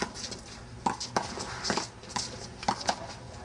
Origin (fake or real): real